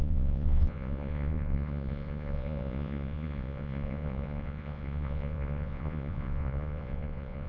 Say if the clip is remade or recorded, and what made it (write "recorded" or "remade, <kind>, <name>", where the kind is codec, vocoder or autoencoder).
remade, vocoder, Vocos